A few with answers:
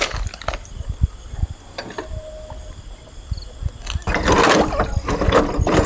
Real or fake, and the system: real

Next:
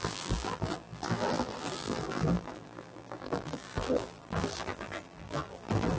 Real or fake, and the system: fake, vocoder, BigVGAN v2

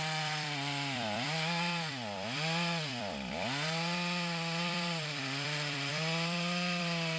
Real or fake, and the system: fake, vocoder, BigVGAN v2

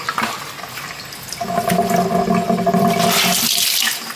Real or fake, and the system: real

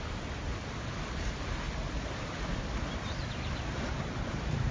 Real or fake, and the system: fake, vocoder, BigVGAN v2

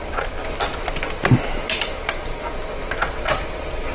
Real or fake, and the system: real